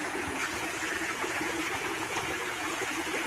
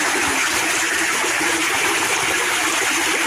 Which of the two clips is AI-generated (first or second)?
first